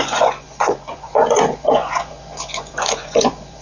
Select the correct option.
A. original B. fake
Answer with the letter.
B